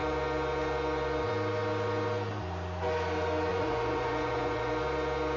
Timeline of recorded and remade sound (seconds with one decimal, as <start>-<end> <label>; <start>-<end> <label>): 0.0-3.5 recorded; 3.5-4.7 remade; 4.7-5.4 recorded